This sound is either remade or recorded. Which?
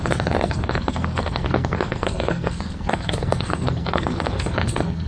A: remade